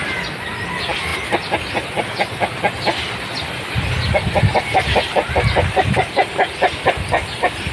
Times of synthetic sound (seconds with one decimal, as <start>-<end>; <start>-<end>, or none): none